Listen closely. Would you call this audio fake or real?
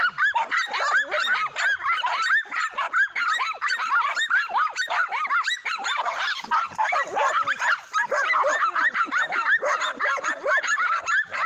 real